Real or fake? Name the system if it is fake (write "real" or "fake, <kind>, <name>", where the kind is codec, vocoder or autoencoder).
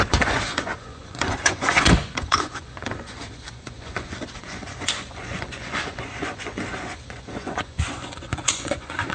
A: fake, vocoder, Vocos